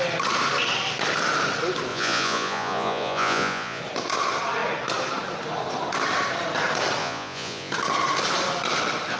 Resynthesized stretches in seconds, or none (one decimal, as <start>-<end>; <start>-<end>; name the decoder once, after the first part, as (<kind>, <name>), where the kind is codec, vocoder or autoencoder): 1.9-3.8 (vocoder, Vocos); 7.0-7.7